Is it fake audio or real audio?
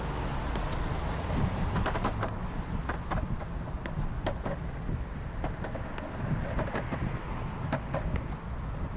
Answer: real